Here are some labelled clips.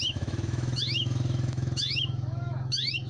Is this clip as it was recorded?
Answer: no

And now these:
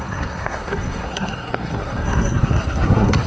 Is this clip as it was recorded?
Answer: no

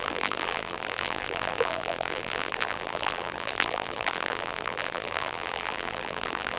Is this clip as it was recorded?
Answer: no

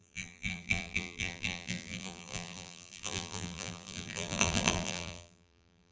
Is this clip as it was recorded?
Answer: no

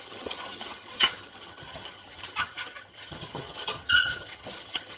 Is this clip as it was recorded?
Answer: no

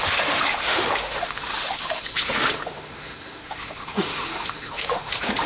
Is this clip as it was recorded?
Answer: no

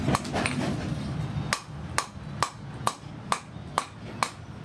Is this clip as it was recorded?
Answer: yes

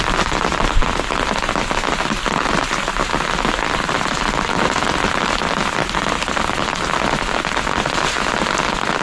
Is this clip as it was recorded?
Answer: yes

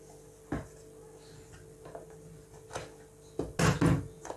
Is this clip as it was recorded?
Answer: yes